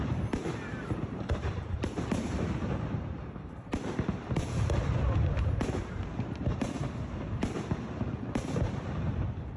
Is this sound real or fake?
fake